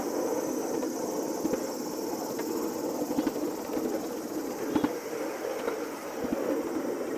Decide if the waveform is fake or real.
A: real